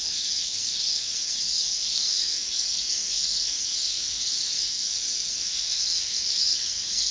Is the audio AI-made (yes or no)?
yes